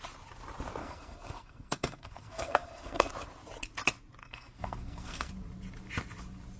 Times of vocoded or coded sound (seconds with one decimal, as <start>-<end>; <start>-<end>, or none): 0.8-3.1; 4.2-5.3